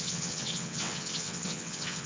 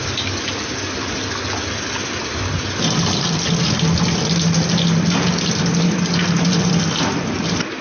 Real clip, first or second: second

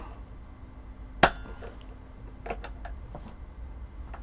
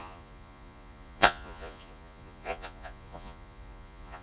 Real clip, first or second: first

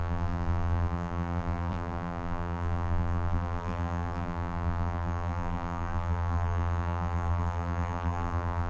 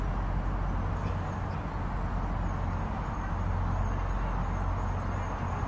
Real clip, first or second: second